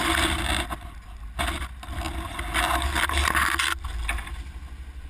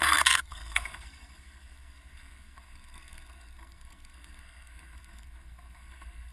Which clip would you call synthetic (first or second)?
second